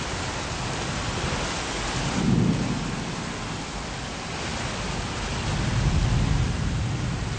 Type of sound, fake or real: real